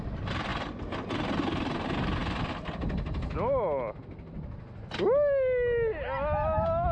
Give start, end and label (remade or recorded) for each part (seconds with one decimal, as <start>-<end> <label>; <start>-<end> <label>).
0.0-6.9 recorded